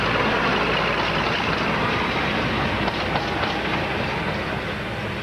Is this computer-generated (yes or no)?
no